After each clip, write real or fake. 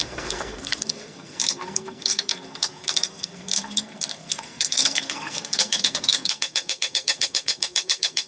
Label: fake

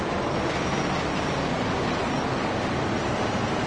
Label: real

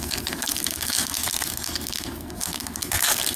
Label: fake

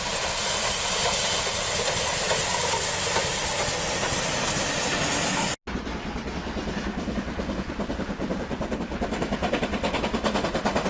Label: real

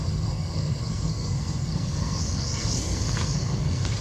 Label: fake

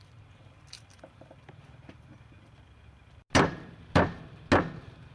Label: real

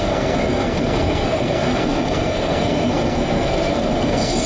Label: fake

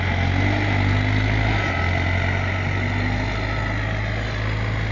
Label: real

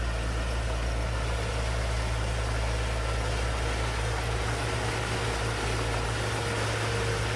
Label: real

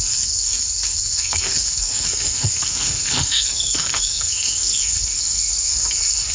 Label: fake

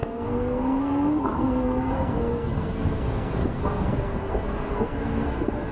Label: fake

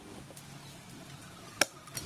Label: real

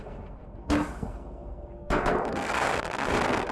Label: fake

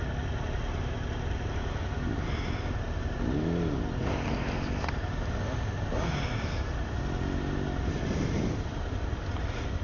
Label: real